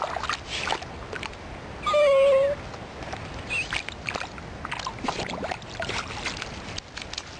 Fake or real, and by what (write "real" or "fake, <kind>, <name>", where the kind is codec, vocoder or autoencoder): real